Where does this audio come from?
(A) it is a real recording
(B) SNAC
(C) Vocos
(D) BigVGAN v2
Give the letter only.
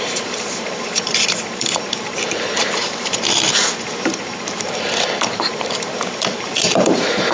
D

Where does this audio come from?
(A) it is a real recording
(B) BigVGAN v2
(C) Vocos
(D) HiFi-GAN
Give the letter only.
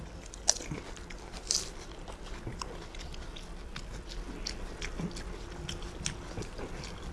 A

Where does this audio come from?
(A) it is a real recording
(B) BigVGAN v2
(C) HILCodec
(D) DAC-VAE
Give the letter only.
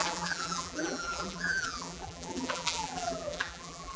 B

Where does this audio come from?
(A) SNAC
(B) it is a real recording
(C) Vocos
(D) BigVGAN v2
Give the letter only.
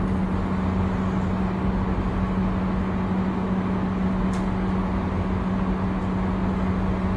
B